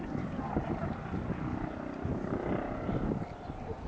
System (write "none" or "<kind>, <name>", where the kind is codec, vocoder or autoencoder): none